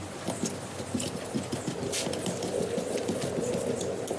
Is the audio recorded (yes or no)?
yes